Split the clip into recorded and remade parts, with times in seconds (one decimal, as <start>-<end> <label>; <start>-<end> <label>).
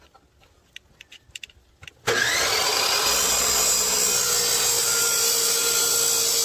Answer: 0.0-6.4 recorded